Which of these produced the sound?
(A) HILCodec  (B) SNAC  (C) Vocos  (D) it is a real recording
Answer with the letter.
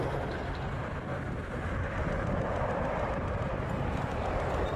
D